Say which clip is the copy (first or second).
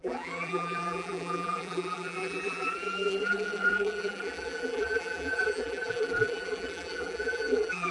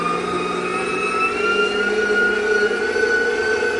first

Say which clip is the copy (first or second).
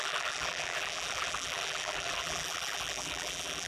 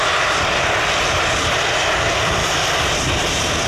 first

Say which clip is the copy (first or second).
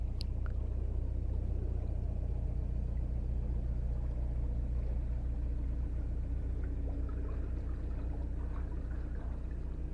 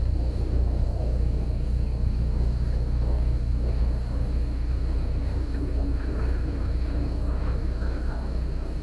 second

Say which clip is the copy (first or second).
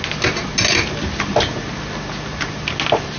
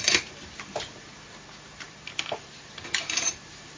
second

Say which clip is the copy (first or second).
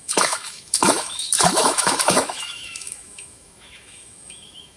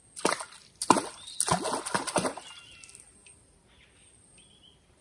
first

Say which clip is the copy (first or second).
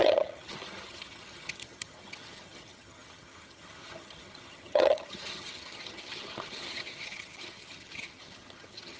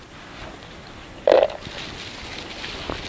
first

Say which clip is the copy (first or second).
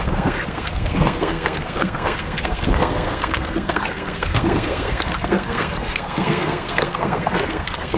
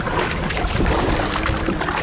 first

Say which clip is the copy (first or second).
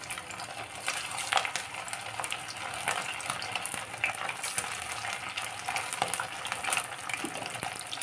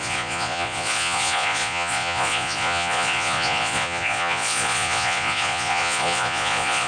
second